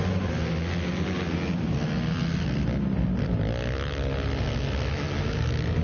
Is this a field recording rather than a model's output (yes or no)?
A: yes